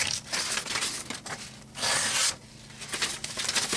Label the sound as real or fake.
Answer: real